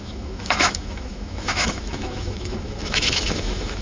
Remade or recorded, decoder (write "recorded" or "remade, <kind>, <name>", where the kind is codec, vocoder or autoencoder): remade, autoencoder, DAC-VAE